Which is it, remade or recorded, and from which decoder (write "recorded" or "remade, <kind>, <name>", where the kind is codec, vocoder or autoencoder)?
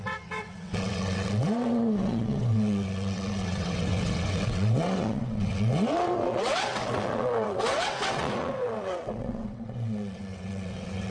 remade, vocoder, WaveNeXt